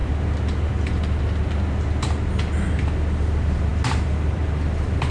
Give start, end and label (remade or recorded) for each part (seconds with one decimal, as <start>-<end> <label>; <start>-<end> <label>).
0.0-5.1 recorded